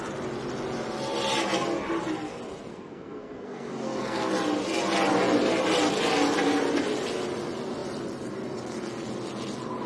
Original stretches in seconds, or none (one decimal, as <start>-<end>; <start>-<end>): 0.0-2.7; 4.3-9.9